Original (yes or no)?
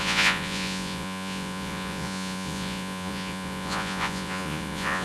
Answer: no